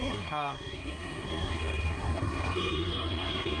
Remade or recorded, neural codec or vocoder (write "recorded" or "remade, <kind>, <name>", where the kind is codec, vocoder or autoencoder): remade, codec, SNAC